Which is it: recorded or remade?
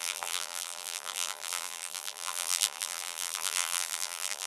remade